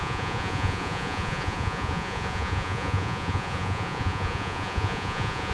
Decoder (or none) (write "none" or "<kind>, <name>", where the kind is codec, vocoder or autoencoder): vocoder, Vocos